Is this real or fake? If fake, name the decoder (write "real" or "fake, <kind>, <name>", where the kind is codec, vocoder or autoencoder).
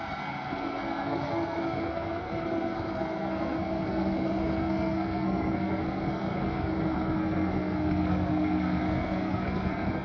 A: fake, codec, SNAC